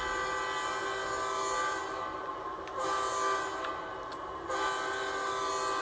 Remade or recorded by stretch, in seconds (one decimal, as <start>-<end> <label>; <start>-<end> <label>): 0.0-5.8 recorded